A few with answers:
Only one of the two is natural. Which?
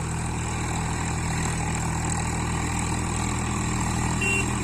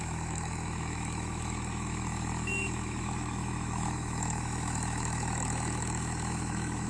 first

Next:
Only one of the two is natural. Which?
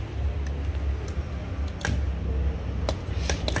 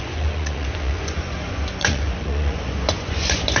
first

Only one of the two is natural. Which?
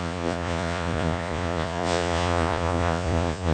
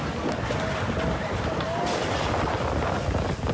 second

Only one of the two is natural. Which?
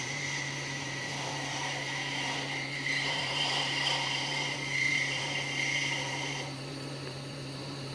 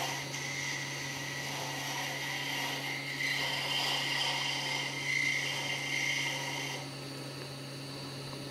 second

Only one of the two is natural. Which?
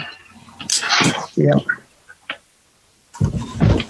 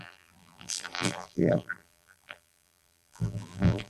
first